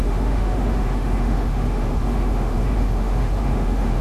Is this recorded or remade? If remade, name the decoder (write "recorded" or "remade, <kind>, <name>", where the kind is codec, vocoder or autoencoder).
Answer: remade, autoencoder, DAC-VAE